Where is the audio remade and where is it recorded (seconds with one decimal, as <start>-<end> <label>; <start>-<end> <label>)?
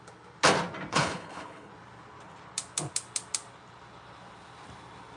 0.0-0.9 recorded; 0.9-1.7 remade; 1.7-5.2 recorded